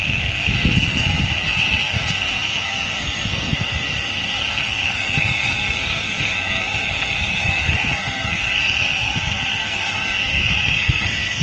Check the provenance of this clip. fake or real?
fake